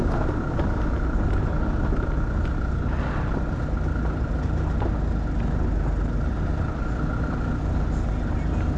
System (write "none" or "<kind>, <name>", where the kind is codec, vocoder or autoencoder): none